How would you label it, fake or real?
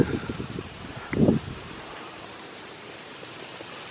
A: fake